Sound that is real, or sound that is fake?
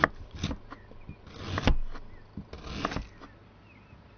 real